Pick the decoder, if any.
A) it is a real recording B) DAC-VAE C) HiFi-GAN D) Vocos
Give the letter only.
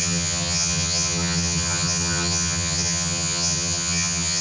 C